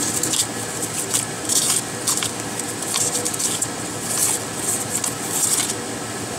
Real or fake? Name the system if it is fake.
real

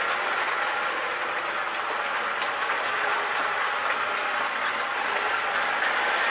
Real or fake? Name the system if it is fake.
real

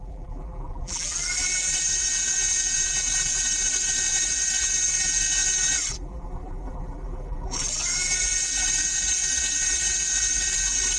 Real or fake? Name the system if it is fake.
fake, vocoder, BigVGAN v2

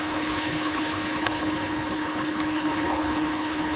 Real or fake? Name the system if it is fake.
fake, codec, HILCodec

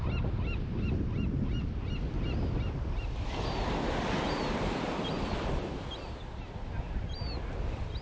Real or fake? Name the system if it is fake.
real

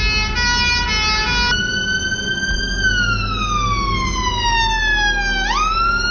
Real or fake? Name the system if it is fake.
real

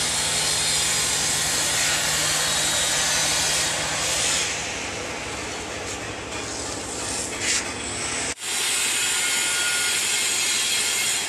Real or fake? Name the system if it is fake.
real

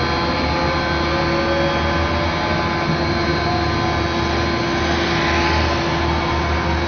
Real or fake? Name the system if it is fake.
real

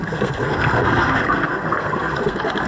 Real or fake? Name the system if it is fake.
fake, codec, SNAC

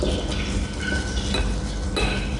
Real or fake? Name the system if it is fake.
real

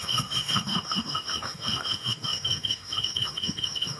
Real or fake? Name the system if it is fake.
fake, autoencoder, DAC-VAE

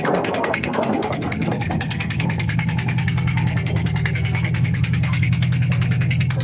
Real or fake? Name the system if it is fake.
fake, codec, SNAC